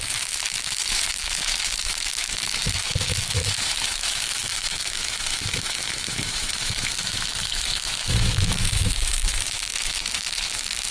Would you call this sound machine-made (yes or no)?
yes